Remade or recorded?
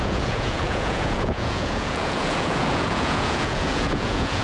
remade